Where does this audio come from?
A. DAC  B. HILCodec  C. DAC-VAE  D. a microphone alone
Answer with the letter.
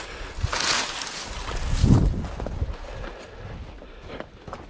D